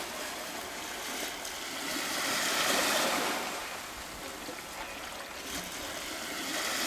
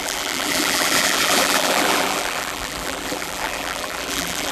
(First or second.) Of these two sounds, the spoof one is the second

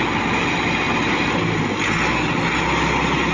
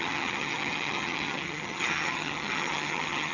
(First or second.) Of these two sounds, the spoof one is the second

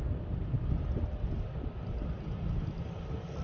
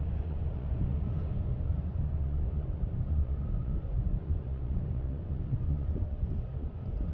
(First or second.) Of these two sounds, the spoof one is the second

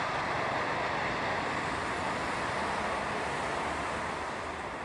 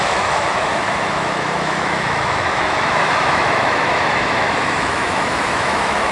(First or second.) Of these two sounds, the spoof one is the second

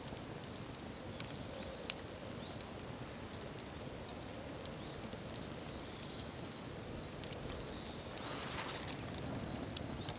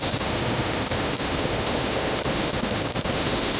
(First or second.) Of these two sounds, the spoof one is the second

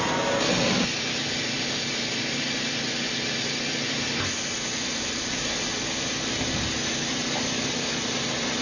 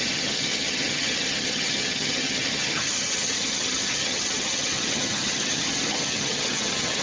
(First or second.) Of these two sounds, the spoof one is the second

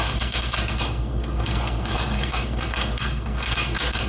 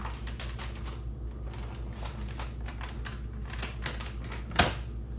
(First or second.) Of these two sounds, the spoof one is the first